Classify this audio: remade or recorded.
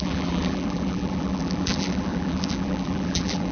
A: remade